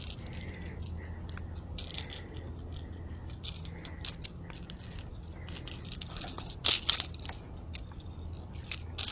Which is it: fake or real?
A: real